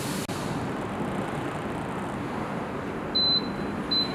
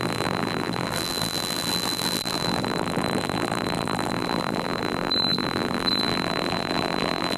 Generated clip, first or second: second